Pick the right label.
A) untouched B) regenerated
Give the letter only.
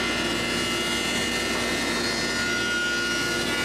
A